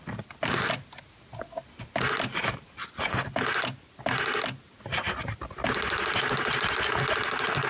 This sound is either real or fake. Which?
real